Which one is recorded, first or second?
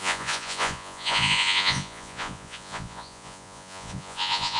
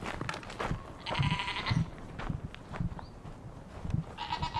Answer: second